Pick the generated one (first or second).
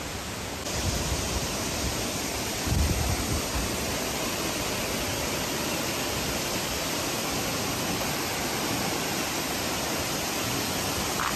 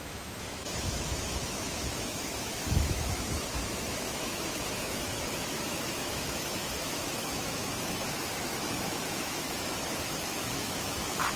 second